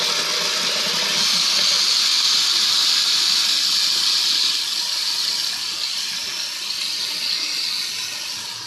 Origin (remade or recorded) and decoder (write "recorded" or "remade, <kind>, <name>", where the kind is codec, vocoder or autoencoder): recorded